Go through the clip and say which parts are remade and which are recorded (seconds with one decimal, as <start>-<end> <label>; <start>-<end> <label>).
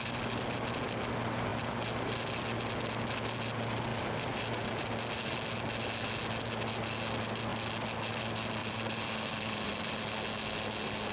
0.0-3.9 recorded; 3.9-4.9 remade; 4.9-8.6 recorded; 8.6-10.0 remade; 10.0-11.1 recorded